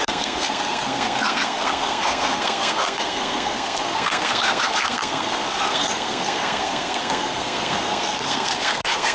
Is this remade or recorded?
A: remade